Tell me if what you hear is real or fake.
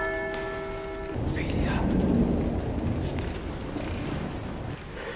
real